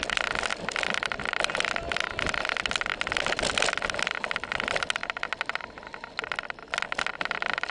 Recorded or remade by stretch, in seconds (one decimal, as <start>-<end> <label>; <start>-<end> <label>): 0.0-7.7 recorded